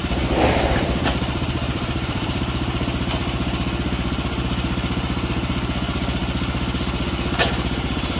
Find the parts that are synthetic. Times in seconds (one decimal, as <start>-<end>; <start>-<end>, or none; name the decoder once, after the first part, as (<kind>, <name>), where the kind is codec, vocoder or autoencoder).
0.0-2.4 (vocoder, BigVGAN v2)